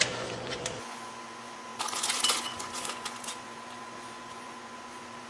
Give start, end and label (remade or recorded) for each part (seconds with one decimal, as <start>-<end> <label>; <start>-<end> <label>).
0.0-5.3 remade